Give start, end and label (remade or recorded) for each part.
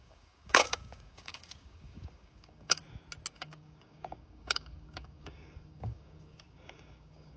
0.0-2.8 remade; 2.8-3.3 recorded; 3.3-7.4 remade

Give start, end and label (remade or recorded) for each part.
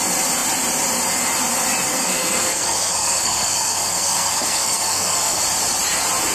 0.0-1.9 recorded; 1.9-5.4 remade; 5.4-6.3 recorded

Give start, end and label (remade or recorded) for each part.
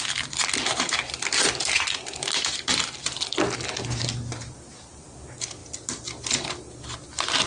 0.0-7.5 recorded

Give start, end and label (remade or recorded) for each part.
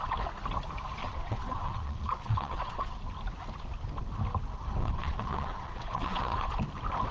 0.0-1.0 recorded; 1.0-3.0 remade; 3.0-4.8 recorded; 4.8-6.5 remade; 6.5-7.1 recorded